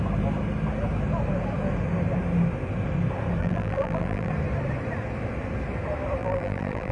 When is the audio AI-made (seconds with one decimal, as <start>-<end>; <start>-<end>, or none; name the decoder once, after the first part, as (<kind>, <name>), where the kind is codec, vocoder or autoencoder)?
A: 3.4-4.3 (vocoder, BigVGAN v2); 6.2-6.9